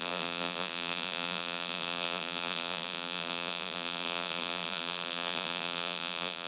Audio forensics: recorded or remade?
remade